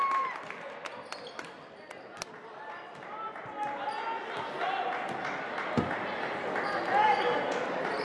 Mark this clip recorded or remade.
recorded